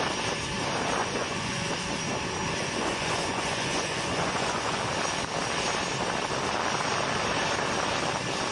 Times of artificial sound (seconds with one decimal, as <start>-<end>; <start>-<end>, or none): 1.0-1.7; 2.6-4.8